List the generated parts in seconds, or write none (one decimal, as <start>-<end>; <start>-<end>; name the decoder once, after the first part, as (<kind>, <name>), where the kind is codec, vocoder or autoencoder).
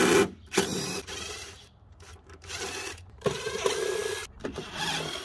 0.7-3.5 (vocoder, BigVGAN v2)